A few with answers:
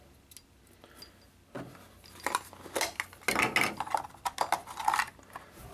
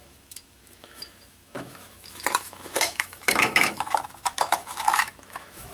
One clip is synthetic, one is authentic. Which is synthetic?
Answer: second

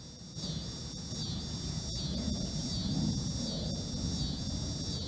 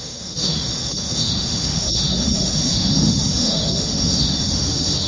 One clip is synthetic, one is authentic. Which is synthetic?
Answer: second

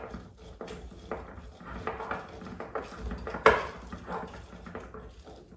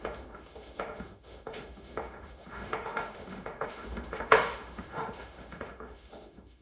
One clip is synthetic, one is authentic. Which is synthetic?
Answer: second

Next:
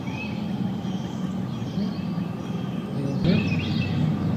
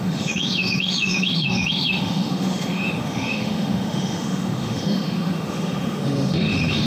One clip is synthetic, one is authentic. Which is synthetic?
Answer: second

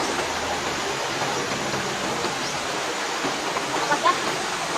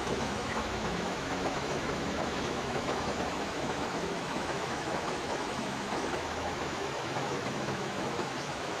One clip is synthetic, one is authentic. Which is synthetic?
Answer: second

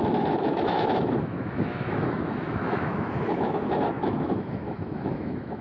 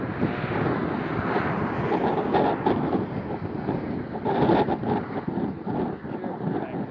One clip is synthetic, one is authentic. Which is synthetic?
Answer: first